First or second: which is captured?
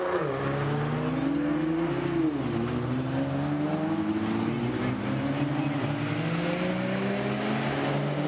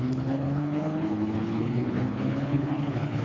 first